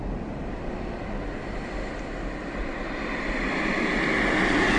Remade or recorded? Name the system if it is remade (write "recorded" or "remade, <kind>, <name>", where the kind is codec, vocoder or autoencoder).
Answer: recorded